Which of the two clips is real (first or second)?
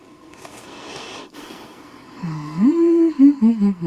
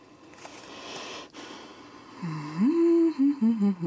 second